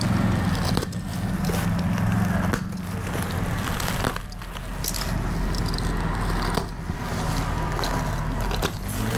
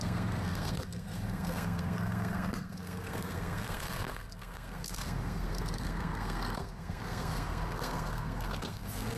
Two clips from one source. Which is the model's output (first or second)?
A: second